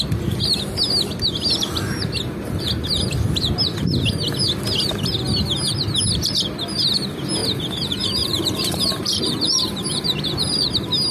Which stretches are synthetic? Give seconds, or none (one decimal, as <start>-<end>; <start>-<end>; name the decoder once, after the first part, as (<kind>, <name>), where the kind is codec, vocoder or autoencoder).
7.4-10.7 (vocoder, BigVGAN v2)